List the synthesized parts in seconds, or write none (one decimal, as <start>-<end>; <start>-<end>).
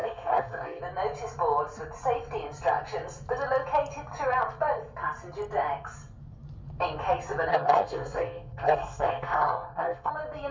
0.0-0.8; 7.5-10.1